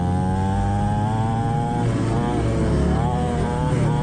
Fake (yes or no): no